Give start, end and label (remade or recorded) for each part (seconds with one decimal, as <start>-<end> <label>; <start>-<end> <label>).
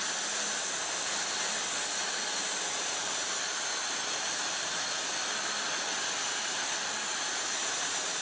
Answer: 0.0-3.0 recorded; 3.0-4.4 remade; 4.4-8.2 recorded